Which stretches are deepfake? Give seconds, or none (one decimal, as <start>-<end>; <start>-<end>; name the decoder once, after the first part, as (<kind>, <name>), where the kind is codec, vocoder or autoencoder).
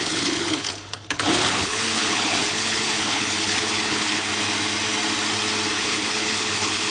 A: 0.0-4.3 (codec, HILCodec); 5.7-6.9